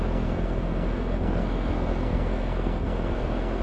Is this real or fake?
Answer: fake